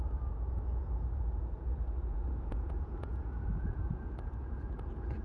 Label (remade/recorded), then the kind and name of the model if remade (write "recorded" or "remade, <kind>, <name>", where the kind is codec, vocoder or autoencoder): remade, vocoder, Vocos